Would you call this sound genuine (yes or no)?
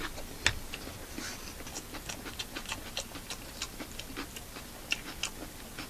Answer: yes